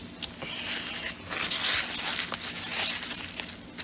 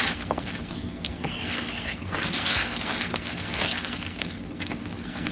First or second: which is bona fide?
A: first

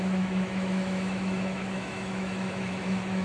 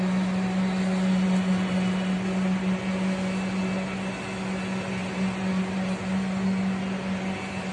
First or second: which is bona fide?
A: second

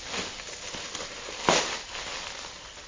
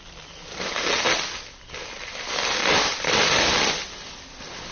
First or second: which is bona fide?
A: first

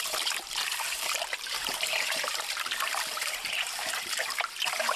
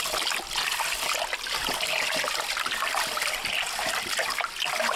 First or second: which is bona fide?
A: second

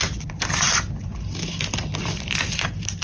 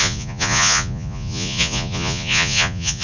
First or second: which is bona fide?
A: first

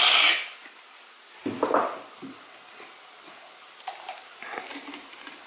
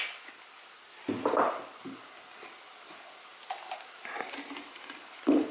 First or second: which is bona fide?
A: second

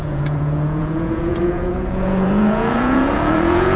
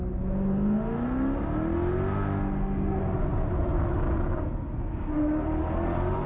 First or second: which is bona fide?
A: second